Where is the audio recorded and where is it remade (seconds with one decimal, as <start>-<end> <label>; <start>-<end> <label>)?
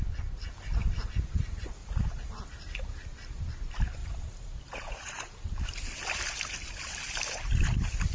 0.0-1.8 recorded; 1.8-2.4 remade; 2.4-4.0 recorded; 4.0-5.7 remade; 5.7-8.1 recorded